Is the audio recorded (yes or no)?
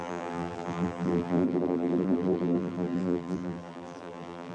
no